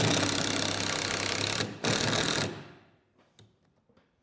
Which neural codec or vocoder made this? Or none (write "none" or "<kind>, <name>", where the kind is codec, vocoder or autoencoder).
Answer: none